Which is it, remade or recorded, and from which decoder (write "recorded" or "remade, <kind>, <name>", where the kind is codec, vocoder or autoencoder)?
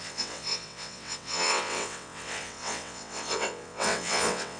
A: remade, vocoder, WaveNeXt